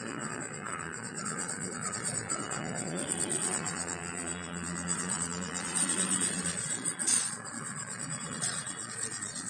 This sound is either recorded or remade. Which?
remade